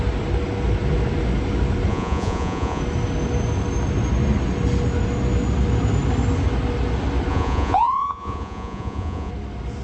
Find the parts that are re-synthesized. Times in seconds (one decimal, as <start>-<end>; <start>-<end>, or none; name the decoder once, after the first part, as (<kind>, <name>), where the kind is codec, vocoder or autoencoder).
1.9-2.8 (vocoder, Vocos); 7.3-9.3